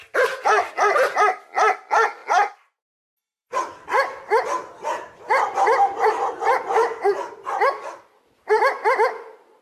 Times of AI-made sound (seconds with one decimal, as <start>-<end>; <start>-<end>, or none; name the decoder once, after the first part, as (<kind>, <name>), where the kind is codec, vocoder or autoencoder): none